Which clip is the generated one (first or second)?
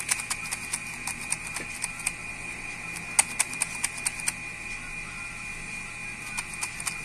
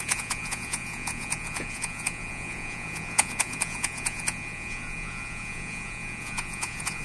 second